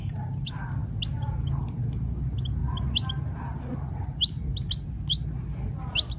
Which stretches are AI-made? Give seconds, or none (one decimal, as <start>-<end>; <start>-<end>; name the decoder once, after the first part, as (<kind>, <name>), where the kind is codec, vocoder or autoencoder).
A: none